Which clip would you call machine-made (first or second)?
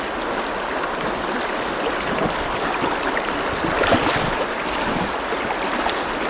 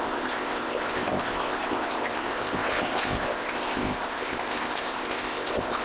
second